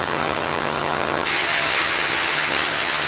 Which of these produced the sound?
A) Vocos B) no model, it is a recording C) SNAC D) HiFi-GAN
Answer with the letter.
D